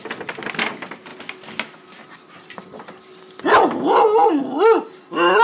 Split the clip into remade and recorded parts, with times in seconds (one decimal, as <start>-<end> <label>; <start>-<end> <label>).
0.0-5.4 recorded